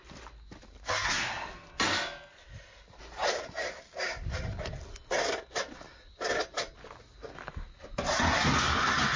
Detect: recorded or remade recorded